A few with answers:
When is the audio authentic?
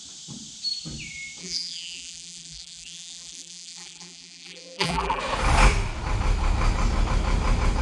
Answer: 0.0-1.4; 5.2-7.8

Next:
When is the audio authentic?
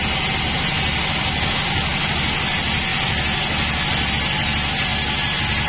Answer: 0.0-5.7